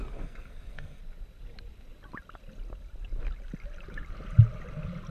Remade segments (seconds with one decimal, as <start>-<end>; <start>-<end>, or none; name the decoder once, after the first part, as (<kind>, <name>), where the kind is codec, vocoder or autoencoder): 0.0-1.0 (codec, SNAC)